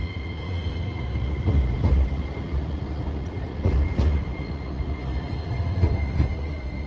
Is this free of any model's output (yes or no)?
no